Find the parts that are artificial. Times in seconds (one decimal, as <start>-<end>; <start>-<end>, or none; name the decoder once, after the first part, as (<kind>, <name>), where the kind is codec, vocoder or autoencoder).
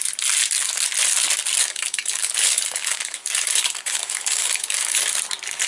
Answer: 1.6-5.0 (codec, DAC)